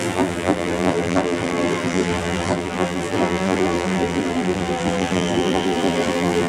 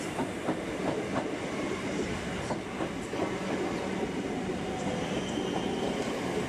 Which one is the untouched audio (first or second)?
second